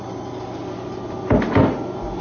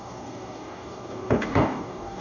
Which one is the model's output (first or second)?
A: second